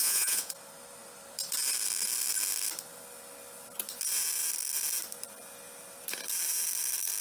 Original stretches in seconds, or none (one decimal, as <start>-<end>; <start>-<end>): 0.5-7.2